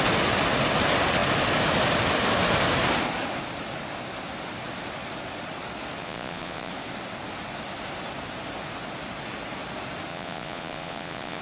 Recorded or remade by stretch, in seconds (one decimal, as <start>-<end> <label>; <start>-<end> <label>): 0.0-6.0 recorded; 6.0-6.7 remade; 6.7-10.1 recorded; 10.1-11.4 remade